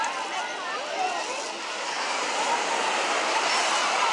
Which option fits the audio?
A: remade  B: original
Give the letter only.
B